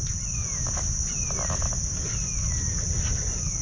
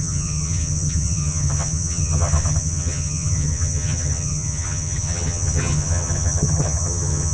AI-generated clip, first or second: second